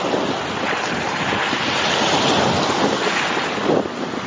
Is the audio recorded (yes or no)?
yes